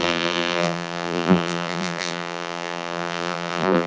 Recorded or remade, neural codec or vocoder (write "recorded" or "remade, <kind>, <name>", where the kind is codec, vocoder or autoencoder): remade, vocoder, BigVGAN v2